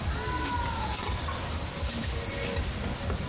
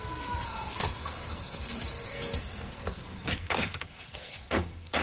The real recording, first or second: first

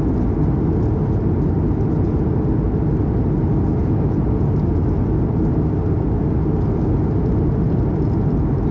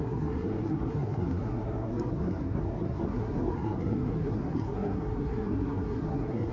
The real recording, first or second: first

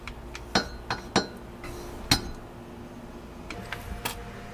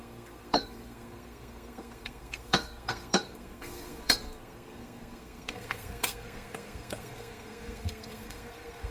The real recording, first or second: first